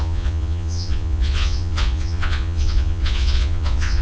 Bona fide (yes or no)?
no